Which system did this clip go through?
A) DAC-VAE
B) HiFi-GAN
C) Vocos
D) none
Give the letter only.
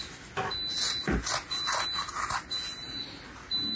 D